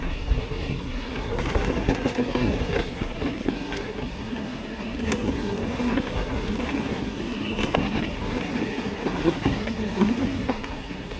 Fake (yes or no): yes